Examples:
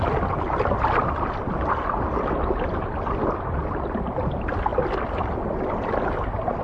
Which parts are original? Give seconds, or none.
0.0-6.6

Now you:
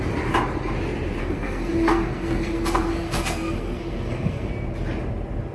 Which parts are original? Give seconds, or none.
0.0-1.2; 4.5-5.5

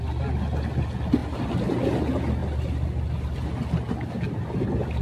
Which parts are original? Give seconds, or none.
0.0-5.0